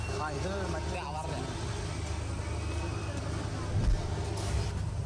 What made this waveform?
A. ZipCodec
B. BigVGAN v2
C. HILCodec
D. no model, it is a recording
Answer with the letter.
D